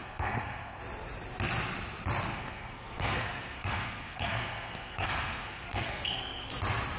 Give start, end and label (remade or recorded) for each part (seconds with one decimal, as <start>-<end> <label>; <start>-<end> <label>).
0.0-0.8 remade; 0.8-2.3 recorded; 2.3-6.5 remade; 6.5-7.0 recorded